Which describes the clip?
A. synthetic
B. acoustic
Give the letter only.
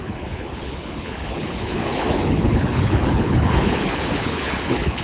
A